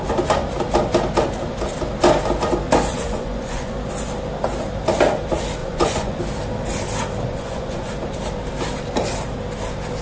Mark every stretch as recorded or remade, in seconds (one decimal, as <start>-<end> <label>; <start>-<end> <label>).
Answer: 0.0-2.9 recorded; 2.9-3.7 remade; 3.7-5.6 recorded; 5.6-6.2 remade; 6.2-7.3 recorded; 7.3-7.9 remade; 7.9-10.0 recorded